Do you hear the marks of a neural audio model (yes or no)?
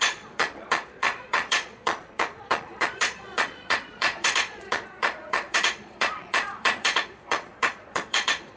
yes